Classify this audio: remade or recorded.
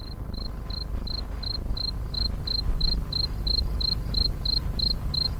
recorded